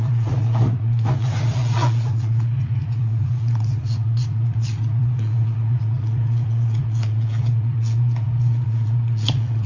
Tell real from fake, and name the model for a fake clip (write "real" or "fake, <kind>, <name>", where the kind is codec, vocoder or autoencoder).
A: fake, vocoder, Vocos